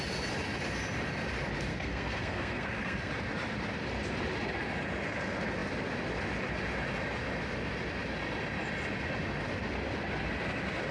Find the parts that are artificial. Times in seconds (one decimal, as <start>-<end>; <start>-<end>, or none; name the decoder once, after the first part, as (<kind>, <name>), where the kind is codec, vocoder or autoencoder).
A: 1.7-3.1 (codec, SNAC)